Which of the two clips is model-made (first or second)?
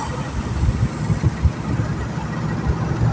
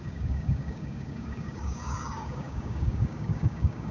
second